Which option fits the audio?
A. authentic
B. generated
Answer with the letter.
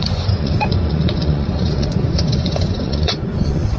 B